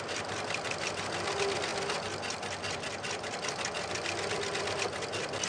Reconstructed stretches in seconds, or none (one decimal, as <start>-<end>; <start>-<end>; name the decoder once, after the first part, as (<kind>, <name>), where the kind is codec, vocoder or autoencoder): none